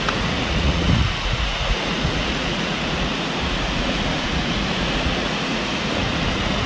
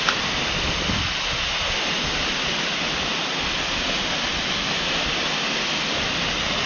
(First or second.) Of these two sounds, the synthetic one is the first